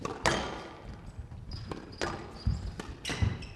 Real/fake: real